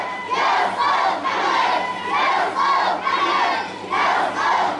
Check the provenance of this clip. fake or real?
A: real